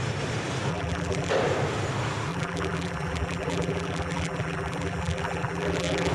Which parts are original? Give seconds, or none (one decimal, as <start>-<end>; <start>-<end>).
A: 0.0-0.7; 1.3-2.3